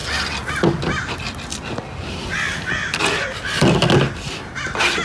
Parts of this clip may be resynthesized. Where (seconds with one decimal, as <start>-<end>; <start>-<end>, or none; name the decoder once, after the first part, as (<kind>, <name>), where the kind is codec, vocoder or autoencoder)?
none